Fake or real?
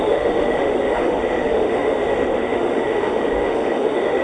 fake